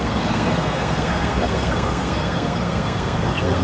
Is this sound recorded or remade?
remade